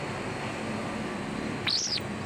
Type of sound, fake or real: real